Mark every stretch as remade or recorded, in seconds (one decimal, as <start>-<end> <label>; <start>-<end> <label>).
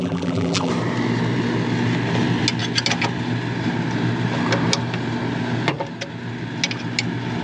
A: 0.0-0.7 remade; 0.7-7.4 recorded